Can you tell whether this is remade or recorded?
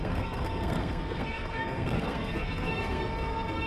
remade